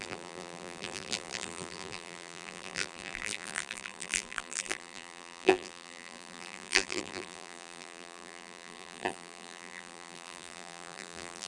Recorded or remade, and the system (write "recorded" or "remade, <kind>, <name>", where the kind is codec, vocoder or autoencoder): remade, vocoder, BigVGAN v2